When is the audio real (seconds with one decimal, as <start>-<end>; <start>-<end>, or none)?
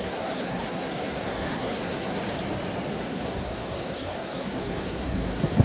2.2-2.9